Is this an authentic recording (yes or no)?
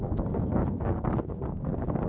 no